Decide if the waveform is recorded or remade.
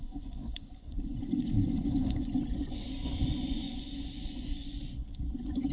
remade